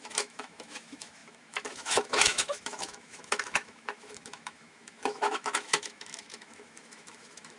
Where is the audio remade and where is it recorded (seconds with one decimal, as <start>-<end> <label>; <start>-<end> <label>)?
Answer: 0.0-7.6 remade

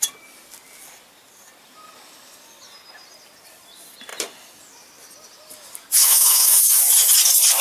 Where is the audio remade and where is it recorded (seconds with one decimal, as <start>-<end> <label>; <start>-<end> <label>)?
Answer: 0.0-6.0 recorded; 6.0-6.8 remade; 6.8-7.6 recorded